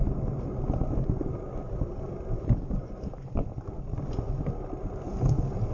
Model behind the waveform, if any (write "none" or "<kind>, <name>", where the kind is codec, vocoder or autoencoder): none